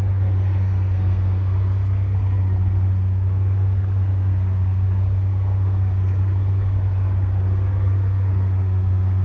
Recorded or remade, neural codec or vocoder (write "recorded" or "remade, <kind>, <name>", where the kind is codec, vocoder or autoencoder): remade, codec, SNAC